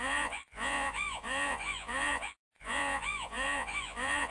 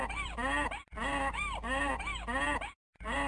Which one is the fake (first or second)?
first